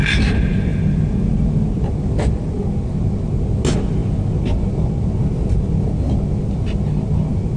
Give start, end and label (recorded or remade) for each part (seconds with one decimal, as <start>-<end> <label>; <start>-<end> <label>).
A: 0.0-7.6 recorded